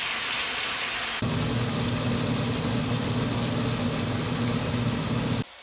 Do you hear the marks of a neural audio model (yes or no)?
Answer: no